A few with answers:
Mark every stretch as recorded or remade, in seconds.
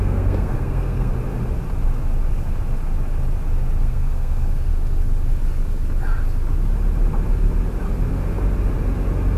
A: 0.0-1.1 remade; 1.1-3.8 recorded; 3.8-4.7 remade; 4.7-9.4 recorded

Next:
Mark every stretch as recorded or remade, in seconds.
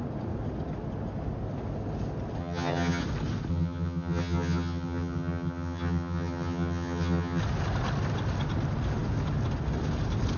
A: 0.0-2.4 recorded; 2.4-3.0 remade; 3.0-3.5 recorded; 3.5-7.4 remade; 7.4-10.4 recorded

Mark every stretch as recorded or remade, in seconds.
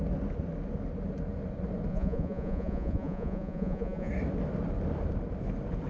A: 0.0-1.9 recorded; 1.9-4.1 remade; 4.1-5.9 recorded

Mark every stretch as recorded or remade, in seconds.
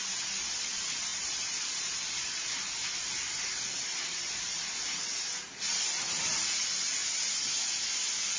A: 0.0-1.1 recorded; 1.1-4.6 remade; 4.6-8.4 recorded